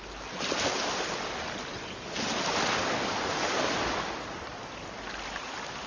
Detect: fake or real real